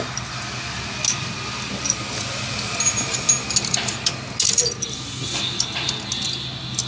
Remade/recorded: recorded